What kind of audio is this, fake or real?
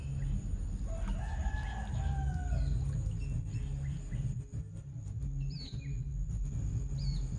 real